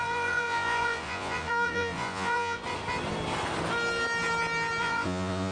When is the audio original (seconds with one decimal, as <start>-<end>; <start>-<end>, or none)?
2.6-4.8